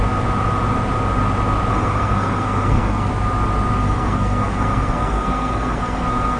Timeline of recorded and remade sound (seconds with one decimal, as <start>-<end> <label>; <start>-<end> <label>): 0.0-1.7 recorded; 1.7-3.1 remade; 3.1-3.8 recorded; 3.8-6.4 remade